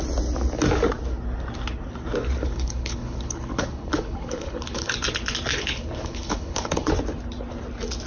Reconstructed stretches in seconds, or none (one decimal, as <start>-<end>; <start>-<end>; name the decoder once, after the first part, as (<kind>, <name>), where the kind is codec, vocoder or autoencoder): 2.4-4.9 (codec, HILCodec); 5.5-6.9